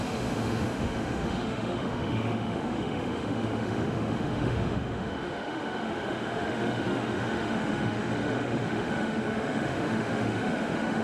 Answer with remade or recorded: remade